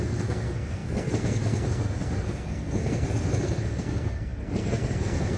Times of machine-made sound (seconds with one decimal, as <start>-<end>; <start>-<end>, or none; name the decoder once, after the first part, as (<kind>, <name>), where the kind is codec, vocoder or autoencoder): 0.0-5.4 (codec, SNAC)